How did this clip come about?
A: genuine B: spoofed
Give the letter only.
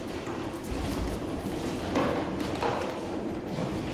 A